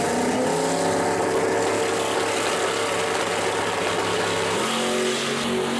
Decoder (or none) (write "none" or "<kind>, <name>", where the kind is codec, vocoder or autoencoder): none